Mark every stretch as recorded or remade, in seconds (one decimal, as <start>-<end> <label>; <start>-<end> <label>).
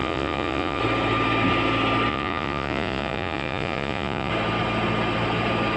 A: 0.0-0.8 remade; 0.8-2.1 recorded; 2.1-4.3 remade; 4.3-5.8 recorded